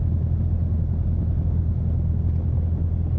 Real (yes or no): yes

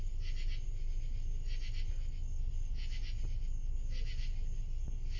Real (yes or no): yes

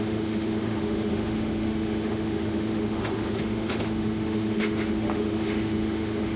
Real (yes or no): no